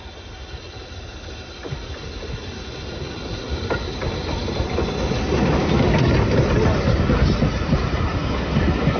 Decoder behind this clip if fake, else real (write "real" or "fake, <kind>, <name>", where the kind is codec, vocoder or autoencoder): real